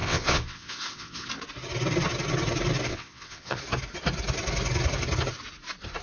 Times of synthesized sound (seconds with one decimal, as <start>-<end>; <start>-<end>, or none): 0.0-1.3; 2.9-3.6